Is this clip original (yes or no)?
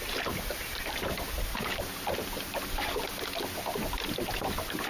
yes